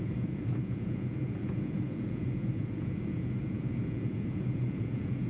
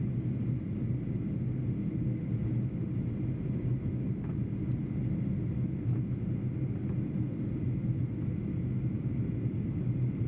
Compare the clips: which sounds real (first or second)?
second